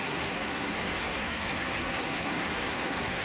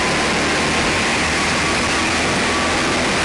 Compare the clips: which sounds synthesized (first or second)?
first